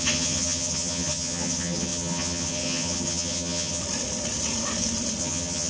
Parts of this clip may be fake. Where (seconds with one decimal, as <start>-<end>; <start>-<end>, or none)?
0.0-3.8; 5.2-5.7